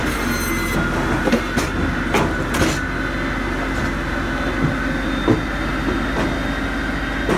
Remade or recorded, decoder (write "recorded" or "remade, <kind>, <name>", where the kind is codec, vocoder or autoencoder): recorded